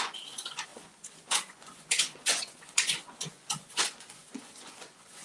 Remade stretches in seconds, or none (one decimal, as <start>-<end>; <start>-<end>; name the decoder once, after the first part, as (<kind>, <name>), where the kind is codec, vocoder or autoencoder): 0.0-5.2 (vocoder, Vocos)